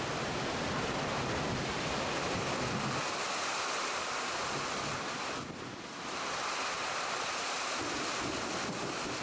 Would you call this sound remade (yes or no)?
no